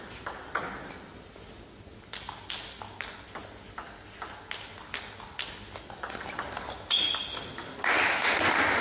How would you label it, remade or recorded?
recorded